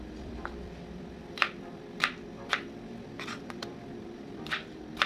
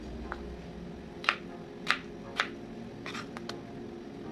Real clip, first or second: second